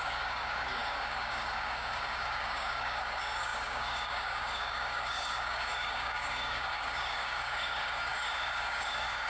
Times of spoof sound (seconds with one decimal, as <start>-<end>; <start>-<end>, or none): 0.0-9.3